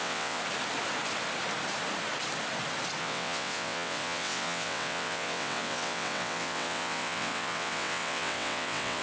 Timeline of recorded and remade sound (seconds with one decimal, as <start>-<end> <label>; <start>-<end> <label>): 0.0-0.4 remade; 0.4-3.0 recorded; 3.0-9.0 remade